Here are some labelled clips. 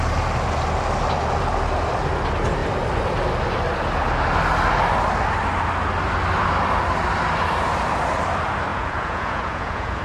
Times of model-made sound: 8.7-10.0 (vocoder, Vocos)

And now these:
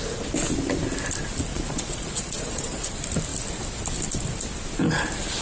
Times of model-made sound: 1.5-2.9 (vocoder, Vocos)

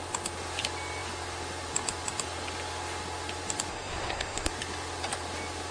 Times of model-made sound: 3.7-4.5 (codec, SNAC)

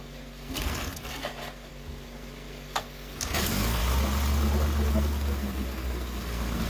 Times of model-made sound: 0.0-3.8 (codec, SNAC); 4.9-6.7

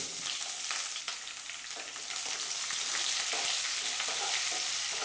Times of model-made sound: none

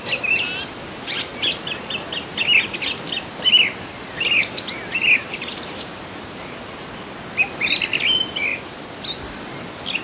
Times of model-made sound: 5.2-6.9 (vocoder, BigVGAN v2); 8.5-9.2